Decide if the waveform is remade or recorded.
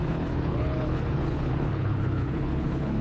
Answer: remade